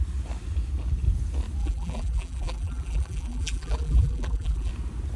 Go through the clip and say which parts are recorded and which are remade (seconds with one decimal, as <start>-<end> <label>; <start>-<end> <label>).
0.0-1.6 recorded; 1.6-4.7 remade; 4.7-5.2 recorded